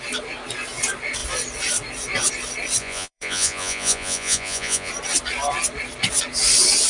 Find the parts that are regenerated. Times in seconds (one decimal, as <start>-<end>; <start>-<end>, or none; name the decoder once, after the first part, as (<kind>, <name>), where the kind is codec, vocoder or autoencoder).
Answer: 2.8-4.9 (vocoder, Vocos)